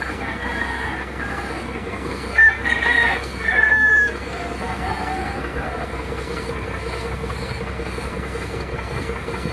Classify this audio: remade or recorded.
remade